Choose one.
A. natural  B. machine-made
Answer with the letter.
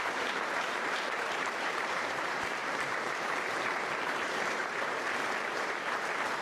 B